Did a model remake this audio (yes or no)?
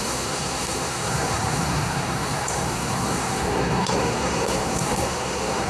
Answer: yes